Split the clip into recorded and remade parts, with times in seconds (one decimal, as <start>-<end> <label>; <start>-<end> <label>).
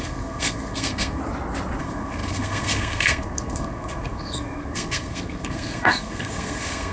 0.0-1.2 remade; 1.2-1.8 recorded; 1.8-6.9 remade